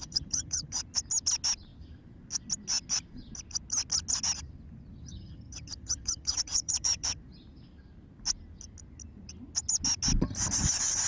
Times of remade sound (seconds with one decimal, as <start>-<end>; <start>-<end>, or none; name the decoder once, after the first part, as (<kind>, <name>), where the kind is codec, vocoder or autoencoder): 0.0-0.8 (vocoder, HiFi-GAN); 5.1-7.2